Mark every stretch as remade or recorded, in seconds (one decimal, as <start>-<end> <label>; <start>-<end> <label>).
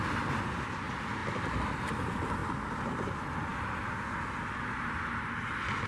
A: 0.0-5.9 recorded